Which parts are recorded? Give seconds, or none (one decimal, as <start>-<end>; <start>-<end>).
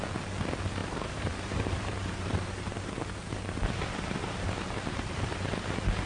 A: 0.0-0.8; 3.2-6.1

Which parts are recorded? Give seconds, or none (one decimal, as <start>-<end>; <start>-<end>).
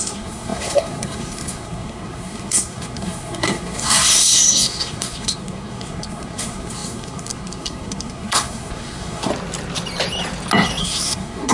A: 9.3-10.8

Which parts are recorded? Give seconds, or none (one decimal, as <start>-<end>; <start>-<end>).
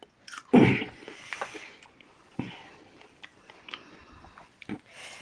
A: 2.6-3.3; 4.8-5.2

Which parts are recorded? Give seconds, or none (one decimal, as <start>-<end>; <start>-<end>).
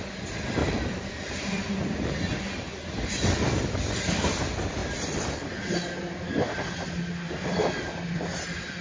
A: 0.0-0.6; 1.7-4.8; 5.6-8.8